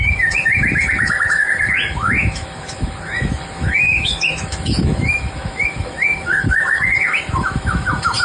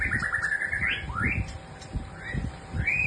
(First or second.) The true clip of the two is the second